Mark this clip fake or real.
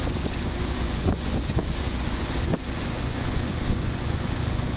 fake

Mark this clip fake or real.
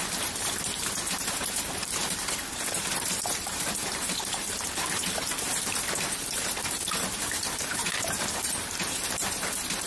fake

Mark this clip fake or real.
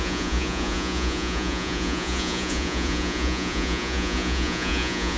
fake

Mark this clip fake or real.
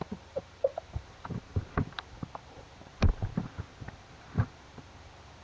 fake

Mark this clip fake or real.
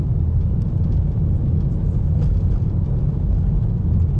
real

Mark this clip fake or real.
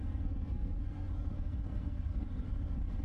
fake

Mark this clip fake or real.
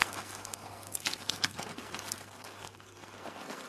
fake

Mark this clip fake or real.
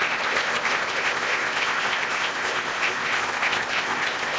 fake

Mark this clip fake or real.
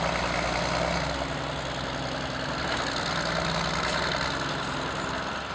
real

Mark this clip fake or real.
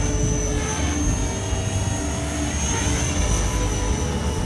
real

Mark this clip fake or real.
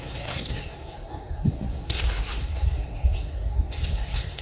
fake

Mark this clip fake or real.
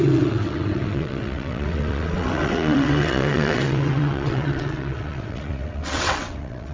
fake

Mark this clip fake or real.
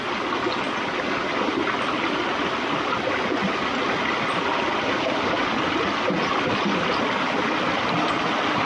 real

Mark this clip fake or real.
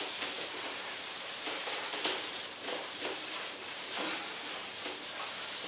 fake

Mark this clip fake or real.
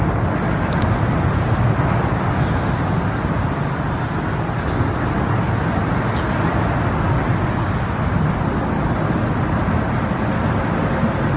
real